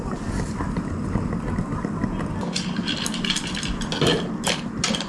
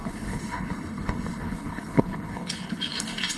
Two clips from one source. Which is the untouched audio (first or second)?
first